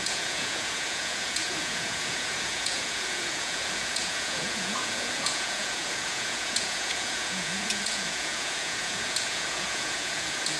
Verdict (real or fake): fake